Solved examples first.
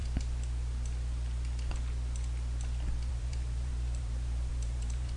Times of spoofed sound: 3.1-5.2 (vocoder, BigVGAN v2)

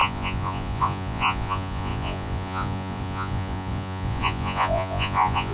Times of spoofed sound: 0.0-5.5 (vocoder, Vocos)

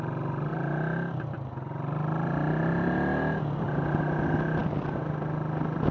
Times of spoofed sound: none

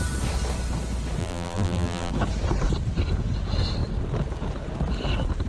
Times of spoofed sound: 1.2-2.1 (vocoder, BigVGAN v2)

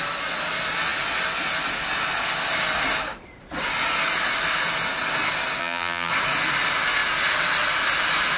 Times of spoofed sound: 5.6-6.1 (vocoder, BigVGAN v2)

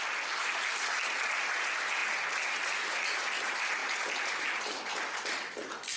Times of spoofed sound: none

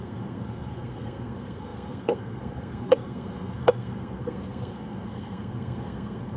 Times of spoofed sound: 0.0-6.4 (codec, SNAC)

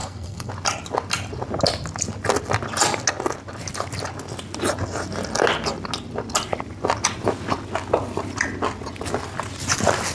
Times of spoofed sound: 0.0-0.5 (codec, SNAC)